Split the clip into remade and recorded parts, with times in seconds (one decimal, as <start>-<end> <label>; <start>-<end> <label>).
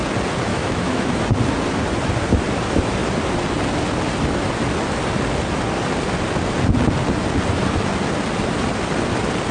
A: 0.0-0.5 recorded; 0.5-1.2 remade; 1.2-9.5 recorded